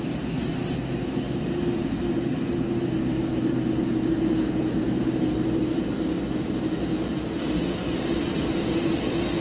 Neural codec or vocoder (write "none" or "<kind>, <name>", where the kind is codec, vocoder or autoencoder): none